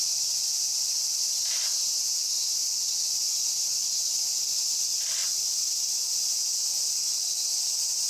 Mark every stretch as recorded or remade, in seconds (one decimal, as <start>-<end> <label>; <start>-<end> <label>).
0.0-2.1 remade; 2.1-4.7 recorded; 4.7-5.2 remade; 5.2-6.5 recorded; 6.5-8.1 remade